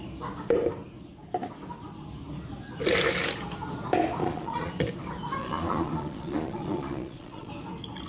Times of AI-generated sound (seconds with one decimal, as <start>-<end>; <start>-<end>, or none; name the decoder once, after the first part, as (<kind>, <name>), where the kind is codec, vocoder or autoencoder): 4.2-4.7 (vocoder, Vocos); 5.4-7.5